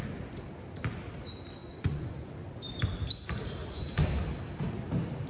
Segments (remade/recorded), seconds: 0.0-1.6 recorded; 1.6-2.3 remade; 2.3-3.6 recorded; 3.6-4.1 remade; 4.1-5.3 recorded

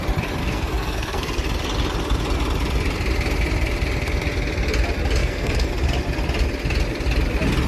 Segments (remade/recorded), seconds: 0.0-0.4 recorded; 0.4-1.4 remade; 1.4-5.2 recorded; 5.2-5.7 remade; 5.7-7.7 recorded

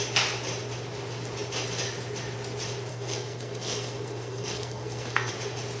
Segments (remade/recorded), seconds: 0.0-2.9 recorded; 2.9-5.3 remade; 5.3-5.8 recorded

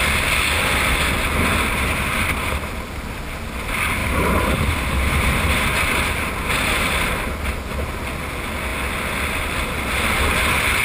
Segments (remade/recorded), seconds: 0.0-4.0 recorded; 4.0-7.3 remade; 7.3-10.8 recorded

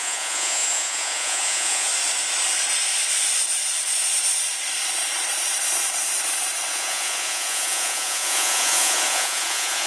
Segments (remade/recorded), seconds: 0.0-1.9 remade; 1.9-6.7 recorded; 6.7-9.9 remade

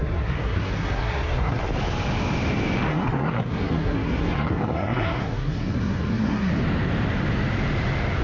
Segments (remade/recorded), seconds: 0.0-1.7 remade; 1.7-2.9 recorded; 2.9-6.5 remade; 6.5-8.2 recorded

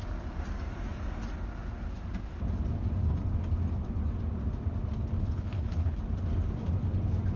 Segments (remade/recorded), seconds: 0.0-5.2 recorded; 5.2-6.0 remade; 6.0-7.4 recorded